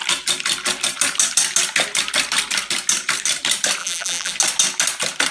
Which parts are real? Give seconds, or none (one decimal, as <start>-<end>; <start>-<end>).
0.0-3.8; 4.3-5.3